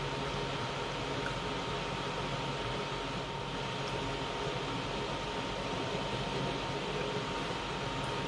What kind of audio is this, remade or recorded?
recorded